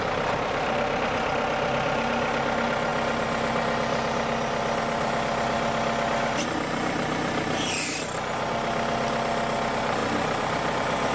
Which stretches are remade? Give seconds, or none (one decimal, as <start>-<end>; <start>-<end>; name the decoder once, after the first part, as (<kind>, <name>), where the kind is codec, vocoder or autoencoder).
none